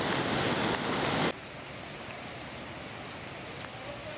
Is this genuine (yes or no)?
yes